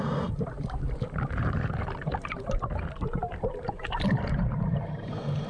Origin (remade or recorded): remade